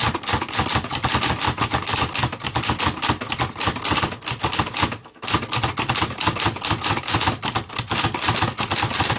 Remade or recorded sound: recorded